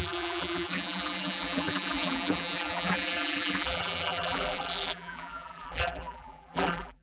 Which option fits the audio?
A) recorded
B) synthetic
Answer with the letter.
B